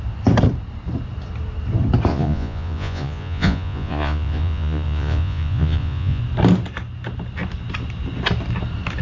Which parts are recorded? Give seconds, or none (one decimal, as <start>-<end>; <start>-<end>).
0.0-2.1; 6.2-9.0